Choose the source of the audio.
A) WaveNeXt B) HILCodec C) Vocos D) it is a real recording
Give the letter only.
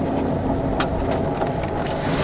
D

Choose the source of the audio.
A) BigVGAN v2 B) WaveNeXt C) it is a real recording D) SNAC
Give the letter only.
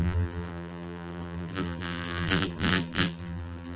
A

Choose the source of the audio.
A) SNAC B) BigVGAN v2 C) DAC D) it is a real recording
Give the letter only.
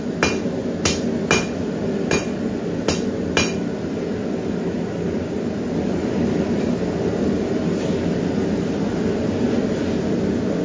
D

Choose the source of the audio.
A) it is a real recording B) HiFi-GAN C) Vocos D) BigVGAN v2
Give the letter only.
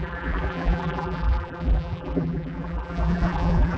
D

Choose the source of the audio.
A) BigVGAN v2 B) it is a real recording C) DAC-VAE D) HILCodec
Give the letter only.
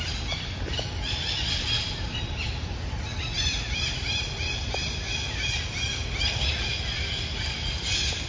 B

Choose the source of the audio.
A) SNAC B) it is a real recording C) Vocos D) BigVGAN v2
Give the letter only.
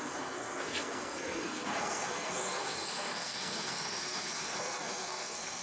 A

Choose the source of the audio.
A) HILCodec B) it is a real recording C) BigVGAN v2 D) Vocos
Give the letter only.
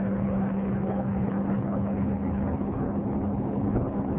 A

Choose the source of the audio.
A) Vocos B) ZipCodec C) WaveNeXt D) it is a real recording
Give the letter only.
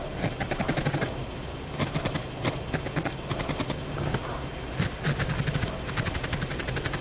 D